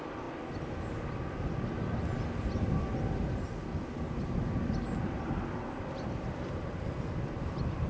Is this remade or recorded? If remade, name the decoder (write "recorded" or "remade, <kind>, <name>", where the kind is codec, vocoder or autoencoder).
recorded